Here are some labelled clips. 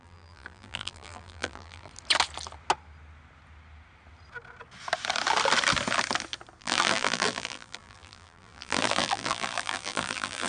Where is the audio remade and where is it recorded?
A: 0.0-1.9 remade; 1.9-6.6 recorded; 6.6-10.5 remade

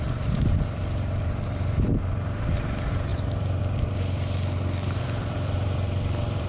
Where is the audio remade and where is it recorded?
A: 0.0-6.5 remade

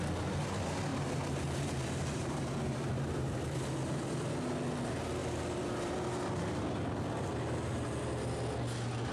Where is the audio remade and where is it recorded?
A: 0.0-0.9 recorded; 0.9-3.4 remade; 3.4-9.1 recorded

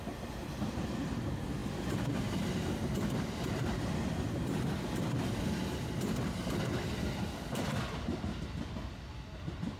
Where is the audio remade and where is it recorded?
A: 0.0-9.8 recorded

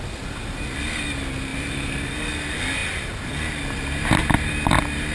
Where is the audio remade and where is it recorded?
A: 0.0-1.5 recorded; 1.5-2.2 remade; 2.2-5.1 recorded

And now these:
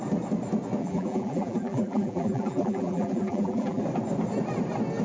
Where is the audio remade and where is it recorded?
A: 0.0-0.8 recorded; 0.8-3.8 remade; 3.8-5.0 recorded